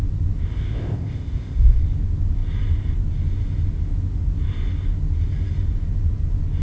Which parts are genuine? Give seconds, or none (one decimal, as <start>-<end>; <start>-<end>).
0.0-0.5; 1.8-6.6

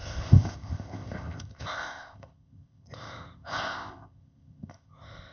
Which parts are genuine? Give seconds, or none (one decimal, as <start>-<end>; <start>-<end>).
none

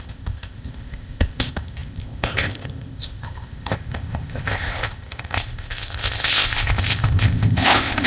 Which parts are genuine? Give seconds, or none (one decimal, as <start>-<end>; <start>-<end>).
none

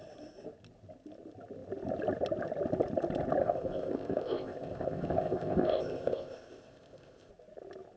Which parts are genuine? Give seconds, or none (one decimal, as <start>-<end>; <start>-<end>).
0.0-3.4; 7.3-8.0

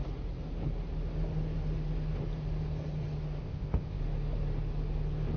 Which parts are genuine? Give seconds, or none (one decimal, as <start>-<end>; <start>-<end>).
0.0-3.4; 4.0-5.4

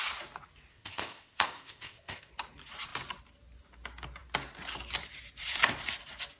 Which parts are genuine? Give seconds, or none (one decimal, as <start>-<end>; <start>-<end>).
0.0-0.7; 2.3-6.4

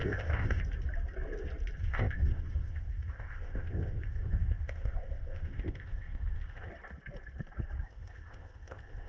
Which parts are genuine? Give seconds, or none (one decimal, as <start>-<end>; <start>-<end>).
0.6-1.8; 6.7-7.8